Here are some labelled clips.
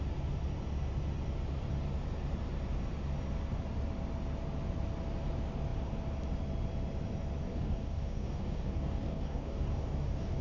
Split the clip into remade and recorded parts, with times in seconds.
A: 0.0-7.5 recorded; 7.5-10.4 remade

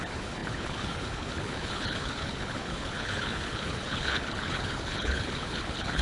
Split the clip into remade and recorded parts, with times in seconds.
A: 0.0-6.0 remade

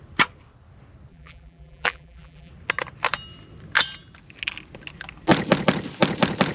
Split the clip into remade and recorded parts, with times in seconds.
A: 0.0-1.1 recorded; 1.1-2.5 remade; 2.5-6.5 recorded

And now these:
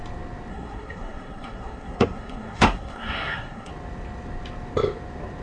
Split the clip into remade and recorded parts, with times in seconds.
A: 0.0-0.5 recorded; 0.5-3.7 remade; 3.7-5.4 recorded